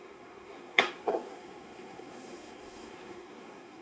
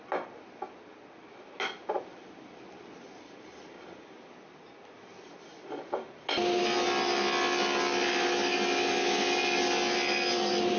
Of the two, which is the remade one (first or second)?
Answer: first